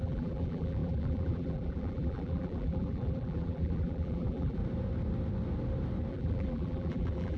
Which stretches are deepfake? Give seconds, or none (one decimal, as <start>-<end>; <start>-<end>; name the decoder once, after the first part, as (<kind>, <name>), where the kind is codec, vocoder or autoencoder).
0.0-4.6 (vocoder, BigVGAN v2); 6.1-7.4